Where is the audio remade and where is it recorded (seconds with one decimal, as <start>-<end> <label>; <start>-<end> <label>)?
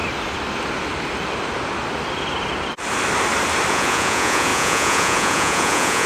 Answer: 0.0-3.7 recorded; 3.7-6.1 remade